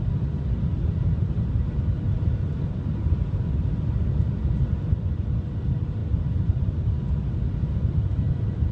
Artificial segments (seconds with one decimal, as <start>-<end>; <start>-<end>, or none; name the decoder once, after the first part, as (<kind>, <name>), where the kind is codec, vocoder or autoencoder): 2.5-3.6 (vocoder, BigVGAN v2)